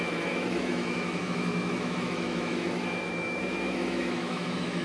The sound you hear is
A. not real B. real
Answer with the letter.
A